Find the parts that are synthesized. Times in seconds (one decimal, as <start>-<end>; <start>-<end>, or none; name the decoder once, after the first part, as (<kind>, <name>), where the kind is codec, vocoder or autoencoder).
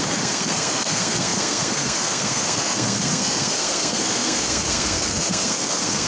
0.0-6.1 (codec, SNAC)